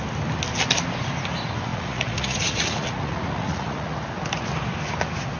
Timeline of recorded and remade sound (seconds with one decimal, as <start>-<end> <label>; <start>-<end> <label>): 0.0-1.7 recorded; 1.7-4.0 remade; 4.0-5.4 recorded